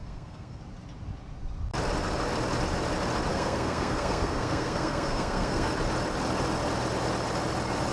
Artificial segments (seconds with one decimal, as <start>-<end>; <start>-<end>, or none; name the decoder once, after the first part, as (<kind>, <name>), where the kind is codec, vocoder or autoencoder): 0.0-0.6 (codec, SNAC); 3.3-5.7